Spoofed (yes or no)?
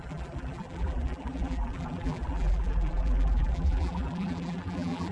yes